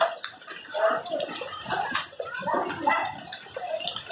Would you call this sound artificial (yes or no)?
no